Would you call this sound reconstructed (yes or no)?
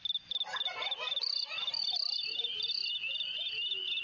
no